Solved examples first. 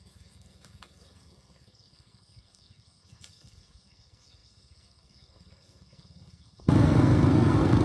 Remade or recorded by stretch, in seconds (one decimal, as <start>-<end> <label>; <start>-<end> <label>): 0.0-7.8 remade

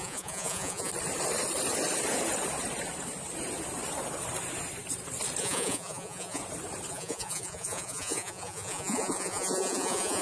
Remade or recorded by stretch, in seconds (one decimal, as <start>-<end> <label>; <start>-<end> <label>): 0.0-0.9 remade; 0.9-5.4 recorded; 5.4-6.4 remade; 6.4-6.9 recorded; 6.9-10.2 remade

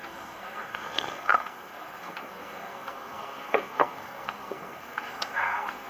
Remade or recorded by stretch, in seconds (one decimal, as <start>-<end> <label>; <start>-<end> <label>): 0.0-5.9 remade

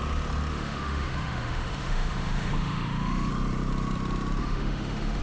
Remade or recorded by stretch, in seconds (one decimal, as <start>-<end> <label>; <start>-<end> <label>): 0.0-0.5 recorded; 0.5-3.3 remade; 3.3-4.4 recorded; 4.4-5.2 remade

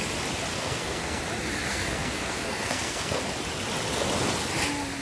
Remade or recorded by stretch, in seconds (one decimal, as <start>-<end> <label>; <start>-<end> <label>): 0.0-0.5 recorded; 0.5-1.2 remade; 1.2-1.7 recorded; 1.7-3.2 remade; 3.2-5.0 recorded

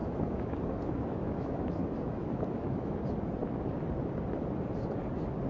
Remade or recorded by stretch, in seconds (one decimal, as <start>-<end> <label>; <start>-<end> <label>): 0.0-3.0 remade; 3.0-5.5 recorded

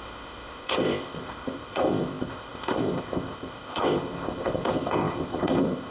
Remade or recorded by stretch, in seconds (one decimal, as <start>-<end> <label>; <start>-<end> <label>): 0.0-5.9 remade